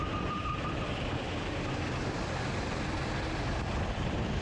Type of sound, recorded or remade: recorded